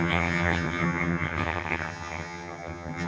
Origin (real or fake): fake